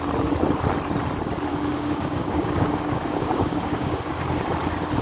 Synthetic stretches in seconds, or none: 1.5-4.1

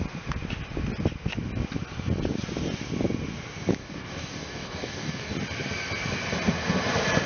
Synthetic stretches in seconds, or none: 3.8-5.3

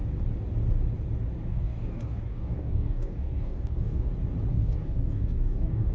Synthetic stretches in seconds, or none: 1.5-4.1; 4.5-5.9

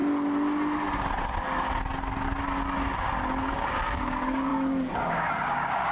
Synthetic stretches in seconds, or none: 3.5-5.9

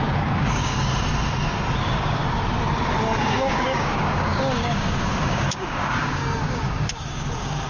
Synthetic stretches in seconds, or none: 0.0-0.9; 1.8-2.2; 3.2-7.7